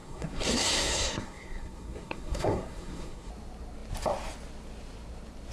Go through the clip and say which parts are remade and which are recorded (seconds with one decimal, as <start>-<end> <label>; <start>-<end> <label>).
0.0-3.3 remade; 3.3-5.5 recorded